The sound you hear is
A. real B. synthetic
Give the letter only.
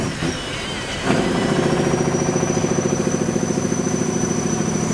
B